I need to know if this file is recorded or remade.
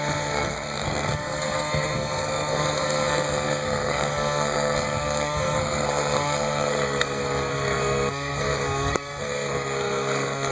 remade